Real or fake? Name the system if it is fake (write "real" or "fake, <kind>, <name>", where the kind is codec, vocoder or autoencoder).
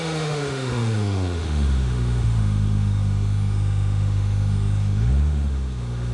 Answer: fake, autoencoder, DAC-VAE